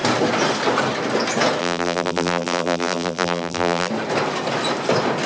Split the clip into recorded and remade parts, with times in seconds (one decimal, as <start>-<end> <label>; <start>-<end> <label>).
0.0-1.6 recorded; 1.6-3.9 remade; 3.9-5.3 recorded